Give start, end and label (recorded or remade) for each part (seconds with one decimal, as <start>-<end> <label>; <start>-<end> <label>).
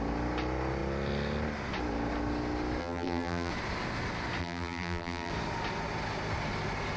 0.0-2.8 recorded; 2.8-3.5 remade; 3.5-4.4 recorded; 4.4-5.3 remade; 5.3-7.0 recorded